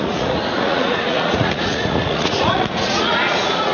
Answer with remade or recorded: remade